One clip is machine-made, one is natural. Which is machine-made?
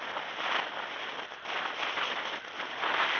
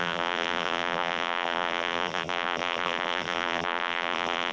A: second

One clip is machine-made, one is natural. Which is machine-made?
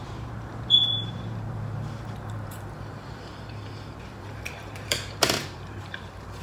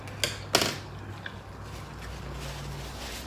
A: first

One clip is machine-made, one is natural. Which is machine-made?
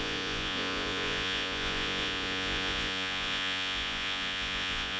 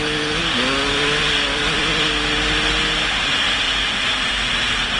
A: first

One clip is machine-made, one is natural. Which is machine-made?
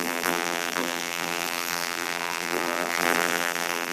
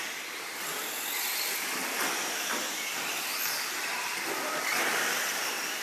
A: first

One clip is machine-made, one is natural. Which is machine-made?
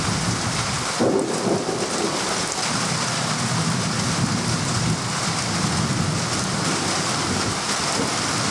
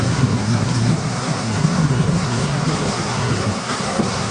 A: second